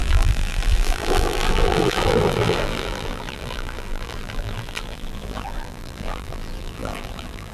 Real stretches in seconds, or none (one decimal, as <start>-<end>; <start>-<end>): none